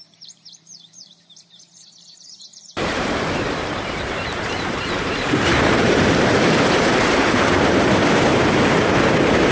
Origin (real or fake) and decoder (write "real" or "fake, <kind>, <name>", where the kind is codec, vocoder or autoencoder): fake, vocoder, BigVGAN v2